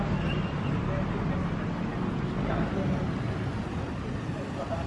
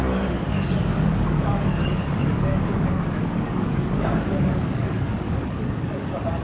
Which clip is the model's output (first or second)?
second